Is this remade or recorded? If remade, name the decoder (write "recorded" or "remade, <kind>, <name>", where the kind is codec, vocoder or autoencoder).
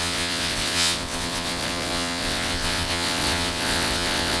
remade, vocoder, WaveNeXt